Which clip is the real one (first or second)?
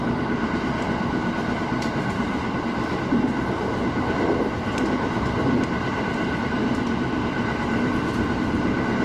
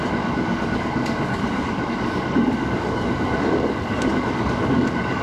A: first